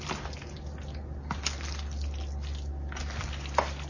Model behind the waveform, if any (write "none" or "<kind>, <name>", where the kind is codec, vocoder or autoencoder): none